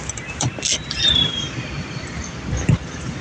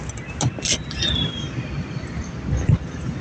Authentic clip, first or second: second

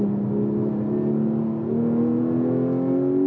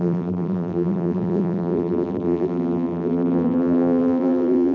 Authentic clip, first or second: first